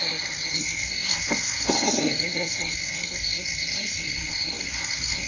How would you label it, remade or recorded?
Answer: remade